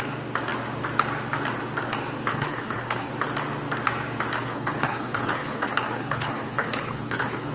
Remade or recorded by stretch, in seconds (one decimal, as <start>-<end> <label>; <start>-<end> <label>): 0.0-2.3 recorded; 2.3-3.1 remade; 3.1-4.4 recorded; 4.4-7.5 remade